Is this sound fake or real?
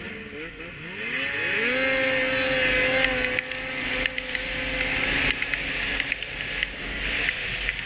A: real